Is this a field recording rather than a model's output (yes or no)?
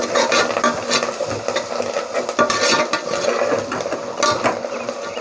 yes